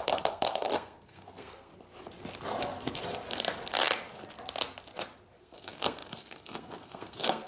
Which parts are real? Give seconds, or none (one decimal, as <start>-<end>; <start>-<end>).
1.7-5.4